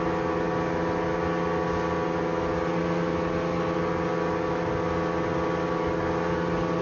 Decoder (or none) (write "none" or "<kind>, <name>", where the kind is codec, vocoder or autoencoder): none